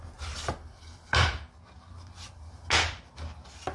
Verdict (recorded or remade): recorded